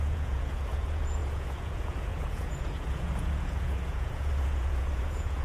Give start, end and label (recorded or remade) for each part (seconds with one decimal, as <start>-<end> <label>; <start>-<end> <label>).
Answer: 0.0-5.4 remade